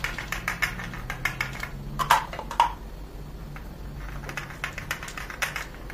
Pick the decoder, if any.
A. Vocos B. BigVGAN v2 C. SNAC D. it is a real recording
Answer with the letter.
D